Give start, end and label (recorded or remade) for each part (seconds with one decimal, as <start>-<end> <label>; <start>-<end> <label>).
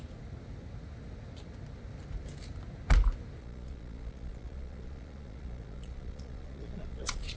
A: 0.0-3.4 recorded; 3.4-7.4 remade